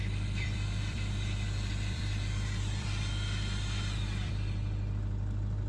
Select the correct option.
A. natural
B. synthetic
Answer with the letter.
B